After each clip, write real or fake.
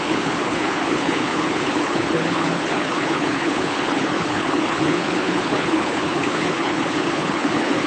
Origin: fake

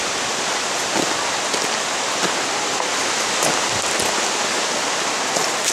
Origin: real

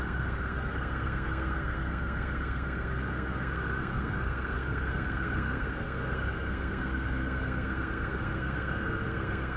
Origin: fake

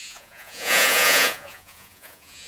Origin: fake